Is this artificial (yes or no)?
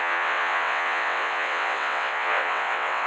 yes